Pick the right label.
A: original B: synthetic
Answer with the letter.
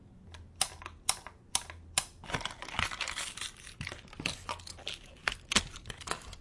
A